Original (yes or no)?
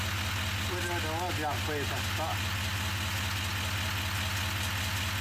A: yes